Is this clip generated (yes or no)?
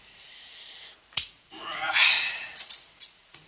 yes